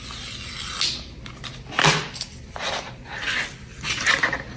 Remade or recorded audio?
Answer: recorded